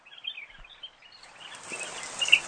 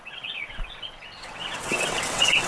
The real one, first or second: first